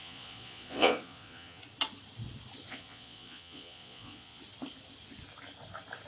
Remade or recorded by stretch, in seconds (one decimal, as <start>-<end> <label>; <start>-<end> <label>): 0.0-1.6 remade; 1.6-2.7 recorded; 2.7-4.4 remade; 4.4-6.1 recorded